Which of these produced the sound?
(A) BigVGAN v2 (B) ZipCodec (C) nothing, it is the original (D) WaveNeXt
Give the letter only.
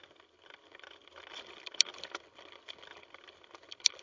C